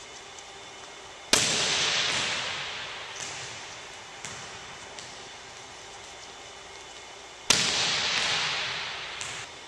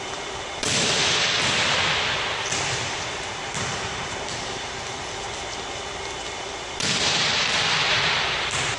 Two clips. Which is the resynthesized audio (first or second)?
second